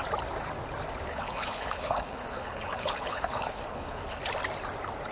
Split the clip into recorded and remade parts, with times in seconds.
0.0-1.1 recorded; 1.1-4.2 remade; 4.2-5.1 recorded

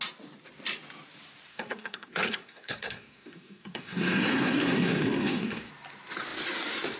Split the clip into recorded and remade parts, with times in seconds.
0.0-1.5 recorded; 1.5-5.7 remade; 5.7-7.0 recorded

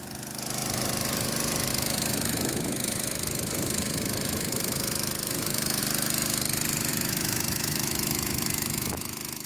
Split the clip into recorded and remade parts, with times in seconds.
0.0-1.7 recorded; 1.7-5.8 remade; 5.8-6.9 recorded; 6.9-9.5 remade

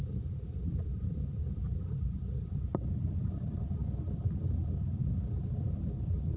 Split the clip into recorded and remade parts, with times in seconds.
0.0-0.9 recorded; 0.9-1.6 remade; 1.6-6.4 recorded

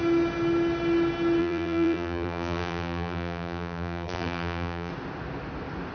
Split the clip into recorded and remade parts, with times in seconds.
0.0-1.4 recorded; 1.4-4.9 remade; 4.9-5.9 recorded